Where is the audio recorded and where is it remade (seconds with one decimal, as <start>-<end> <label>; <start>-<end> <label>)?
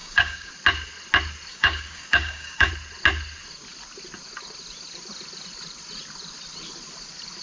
0.0-0.5 remade; 0.5-1.5 recorded; 1.5-2.7 remade; 2.7-7.4 recorded